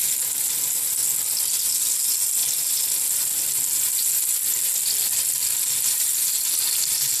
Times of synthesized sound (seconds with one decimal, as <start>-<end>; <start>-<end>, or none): none